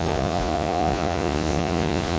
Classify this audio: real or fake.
fake